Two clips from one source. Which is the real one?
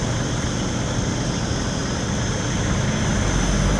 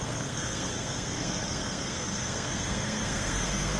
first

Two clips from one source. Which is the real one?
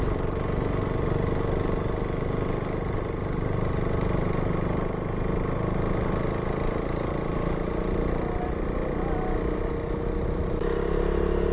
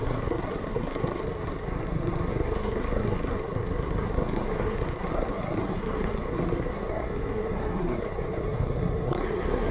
first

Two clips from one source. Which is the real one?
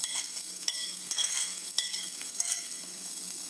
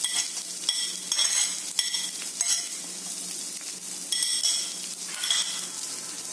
second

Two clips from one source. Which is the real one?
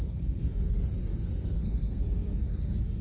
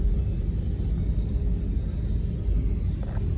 second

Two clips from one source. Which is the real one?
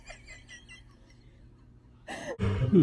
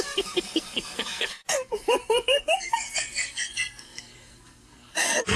first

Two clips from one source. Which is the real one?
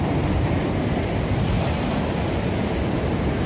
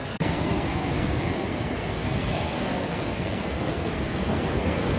first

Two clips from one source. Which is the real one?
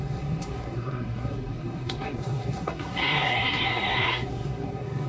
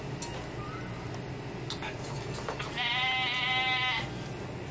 second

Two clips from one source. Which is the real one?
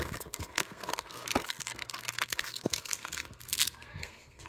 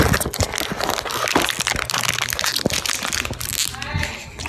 second